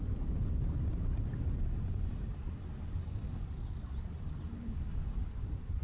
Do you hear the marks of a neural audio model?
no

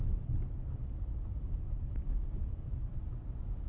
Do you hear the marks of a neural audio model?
no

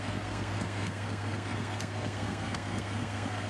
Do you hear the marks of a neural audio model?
yes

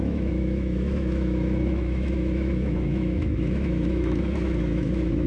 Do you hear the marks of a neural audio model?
yes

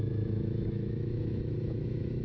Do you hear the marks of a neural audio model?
yes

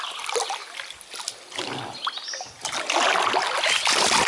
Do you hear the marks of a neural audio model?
no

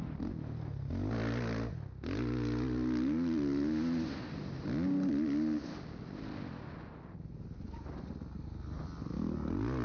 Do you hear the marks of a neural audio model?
no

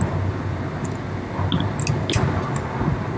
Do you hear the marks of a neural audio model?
no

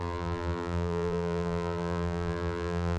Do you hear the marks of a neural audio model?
yes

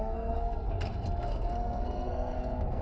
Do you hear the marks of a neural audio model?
yes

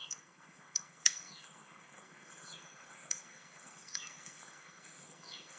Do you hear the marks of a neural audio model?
yes